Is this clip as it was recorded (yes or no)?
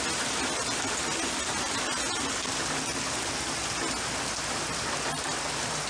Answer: yes